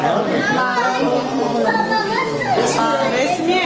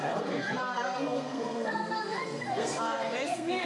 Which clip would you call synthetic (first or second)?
second